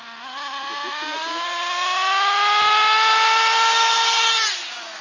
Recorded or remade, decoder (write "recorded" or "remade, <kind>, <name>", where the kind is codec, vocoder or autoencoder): recorded